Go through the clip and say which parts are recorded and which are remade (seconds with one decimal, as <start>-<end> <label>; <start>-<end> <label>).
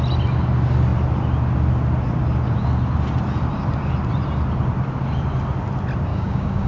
0.0-6.1 recorded; 6.1-6.7 remade